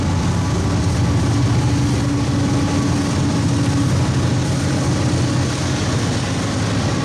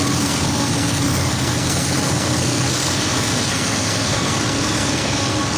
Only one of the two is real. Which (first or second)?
first